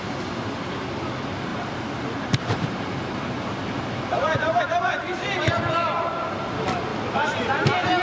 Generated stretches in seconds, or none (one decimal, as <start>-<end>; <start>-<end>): 1.5-4.6

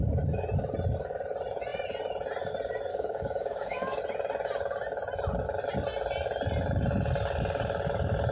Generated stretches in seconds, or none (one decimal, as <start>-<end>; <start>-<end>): 2.9-4.0

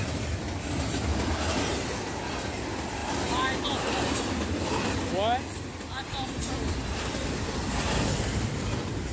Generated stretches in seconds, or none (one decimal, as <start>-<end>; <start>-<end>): none

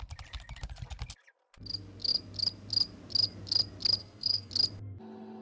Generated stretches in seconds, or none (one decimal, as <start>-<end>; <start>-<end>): 4.0-4.5

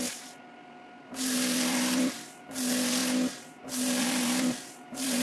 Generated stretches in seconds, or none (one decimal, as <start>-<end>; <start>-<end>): 0.0-3.0; 3.6-5.2

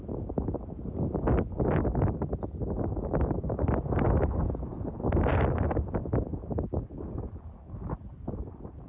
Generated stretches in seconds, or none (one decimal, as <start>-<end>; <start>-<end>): none

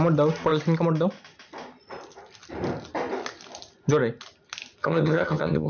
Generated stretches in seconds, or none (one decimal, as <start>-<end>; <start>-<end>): 4.8-5.7

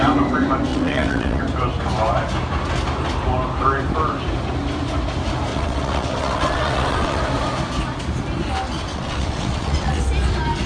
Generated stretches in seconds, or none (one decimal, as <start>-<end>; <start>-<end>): 0.7-1.4; 5.5-7.2; 8.9-10.0